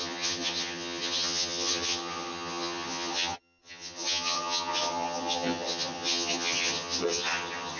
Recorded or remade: remade